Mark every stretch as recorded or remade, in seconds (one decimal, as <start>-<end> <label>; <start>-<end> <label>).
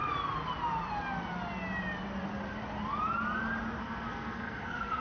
0.0-3.8 recorded; 3.8-5.0 remade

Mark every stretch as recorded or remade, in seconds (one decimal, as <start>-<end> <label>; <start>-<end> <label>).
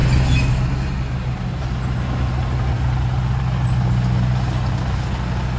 0.0-5.6 recorded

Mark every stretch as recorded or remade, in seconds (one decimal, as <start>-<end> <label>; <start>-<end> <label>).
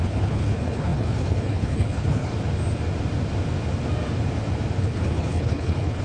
0.0-2.3 remade; 2.3-4.8 recorded; 4.8-6.0 remade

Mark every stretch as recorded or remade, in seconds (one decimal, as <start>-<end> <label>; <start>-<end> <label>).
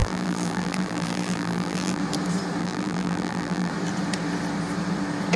0.0-2.0 remade; 2.0-2.6 recorded; 2.6-3.7 remade; 3.7-5.4 recorded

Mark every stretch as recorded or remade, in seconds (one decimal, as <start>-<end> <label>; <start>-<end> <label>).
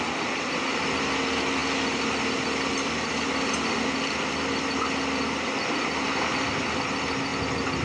0.0-7.8 recorded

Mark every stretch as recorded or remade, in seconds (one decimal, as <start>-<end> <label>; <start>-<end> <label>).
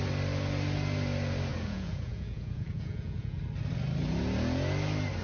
0.0-1.5 recorded; 1.5-3.4 remade; 3.4-5.2 recorded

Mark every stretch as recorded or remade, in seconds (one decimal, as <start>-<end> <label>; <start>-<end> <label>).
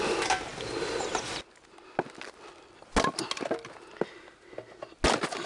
0.0-5.5 recorded